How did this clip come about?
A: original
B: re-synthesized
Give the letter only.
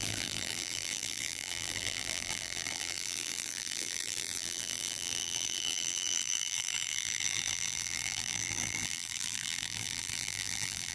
B